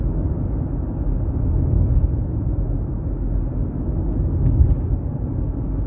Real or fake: real